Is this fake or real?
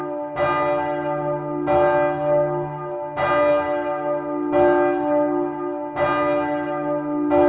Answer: real